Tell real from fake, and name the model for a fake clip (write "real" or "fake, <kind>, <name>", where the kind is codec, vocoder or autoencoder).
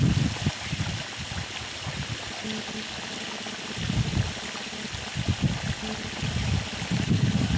real